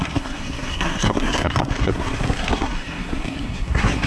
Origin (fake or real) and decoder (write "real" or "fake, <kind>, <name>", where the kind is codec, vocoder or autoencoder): fake, codec, SNAC